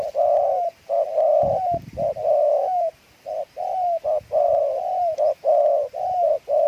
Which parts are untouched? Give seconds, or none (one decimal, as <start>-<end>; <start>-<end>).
0.0-2.4; 2.9-6.7